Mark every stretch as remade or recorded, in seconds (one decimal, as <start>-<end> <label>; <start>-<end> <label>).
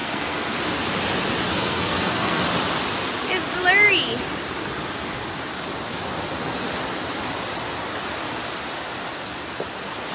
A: 0.0-0.5 remade; 0.5-1.5 recorded; 1.5-2.4 remade; 2.4-10.1 recorded